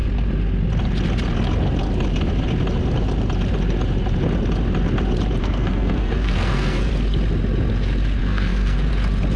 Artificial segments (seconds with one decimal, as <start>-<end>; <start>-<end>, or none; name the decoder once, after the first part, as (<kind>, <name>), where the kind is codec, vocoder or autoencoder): 5.4-6.9 (codec, SNAC); 8.2-8.9